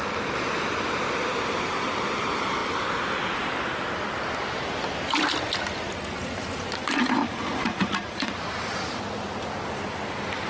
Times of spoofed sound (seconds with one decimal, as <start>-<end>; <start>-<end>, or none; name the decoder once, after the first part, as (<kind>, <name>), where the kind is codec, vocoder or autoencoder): 7.2-9.0 (vocoder, Vocos)